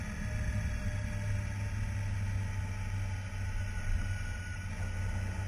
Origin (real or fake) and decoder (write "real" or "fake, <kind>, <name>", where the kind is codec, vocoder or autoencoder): real